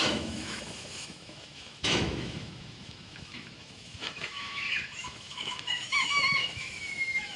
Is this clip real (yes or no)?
no